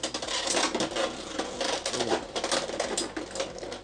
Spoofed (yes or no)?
no